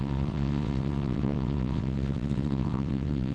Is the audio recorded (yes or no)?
no